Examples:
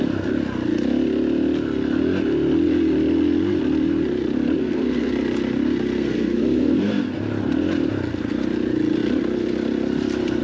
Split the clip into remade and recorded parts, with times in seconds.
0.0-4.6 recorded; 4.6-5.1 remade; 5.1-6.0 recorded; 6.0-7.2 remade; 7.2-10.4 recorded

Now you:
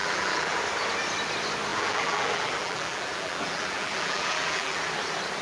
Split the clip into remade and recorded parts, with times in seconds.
0.0-0.6 remade; 0.6-1.7 recorded; 1.7-4.8 remade; 4.8-5.4 recorded

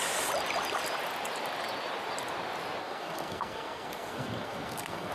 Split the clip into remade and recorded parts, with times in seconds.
0.0-2.8 recorded; 2.8-5.1 remade

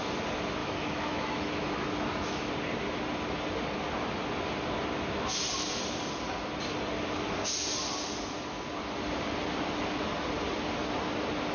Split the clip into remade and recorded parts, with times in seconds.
0.0-0.6 recorded; 0.6-2.5 remade; 2.5-11.5 recorded

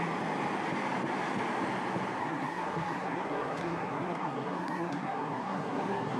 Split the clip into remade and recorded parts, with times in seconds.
0.0-2.2 recorded; 2.2-6.2 remade

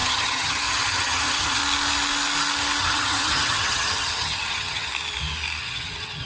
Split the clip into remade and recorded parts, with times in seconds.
0.0-1.6 remade; 1.6-2.8 recorded; 2.8-4.9 remade; 4.9-5.6 recorded; 5.6-6.3 remade

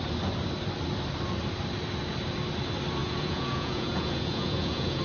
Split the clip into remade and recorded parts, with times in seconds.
0.0-3.0 recorded; 3.0-5.0 remade

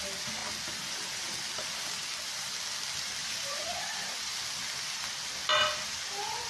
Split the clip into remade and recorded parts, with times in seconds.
0.0-3.2 recorded; 3.2-4.3 remade; 4.3-6.5 recorded